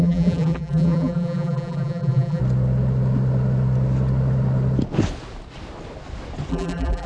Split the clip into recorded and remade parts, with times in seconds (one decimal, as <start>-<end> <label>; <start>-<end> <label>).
0.0-2.4 remade; 2.4-6.5 recorded; 6.5-7.1 remade